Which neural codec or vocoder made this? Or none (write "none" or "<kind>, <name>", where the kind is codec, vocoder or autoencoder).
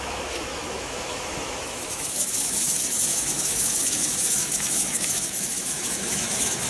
autoencoder, DAC-VAE